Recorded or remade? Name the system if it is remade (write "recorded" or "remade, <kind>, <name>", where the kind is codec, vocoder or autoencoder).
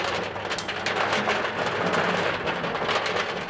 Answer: recorded